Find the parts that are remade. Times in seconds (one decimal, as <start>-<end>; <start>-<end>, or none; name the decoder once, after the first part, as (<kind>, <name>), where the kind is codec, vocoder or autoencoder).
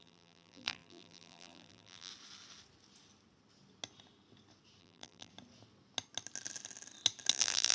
0.0-2.1 (vocoder, BigVGAN v2); 4.8-5.3; 7.3-7.7